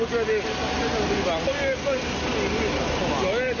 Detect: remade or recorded recorded